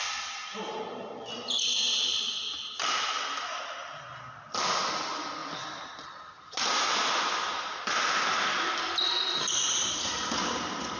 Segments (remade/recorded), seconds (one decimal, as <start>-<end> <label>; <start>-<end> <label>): 0.0-0.5 recorded; 0.5-4.7 remade; 4.7-11.0 recorded